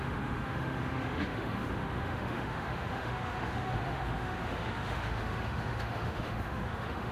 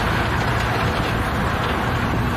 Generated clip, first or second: first